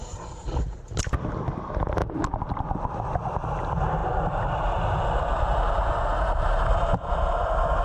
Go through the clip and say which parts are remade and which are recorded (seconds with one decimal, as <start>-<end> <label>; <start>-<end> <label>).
0.0-7.8 recorded